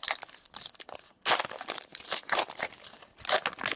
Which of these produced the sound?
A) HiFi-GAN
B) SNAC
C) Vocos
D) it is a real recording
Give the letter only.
D